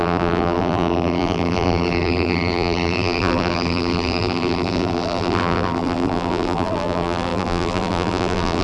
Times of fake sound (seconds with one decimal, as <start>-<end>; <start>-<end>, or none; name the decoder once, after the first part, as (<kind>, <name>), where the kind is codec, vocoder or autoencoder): 0.0-8.6 (vocoder, BigVGAN v2)